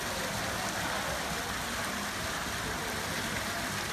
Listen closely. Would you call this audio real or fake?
real